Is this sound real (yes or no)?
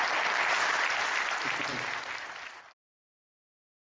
yes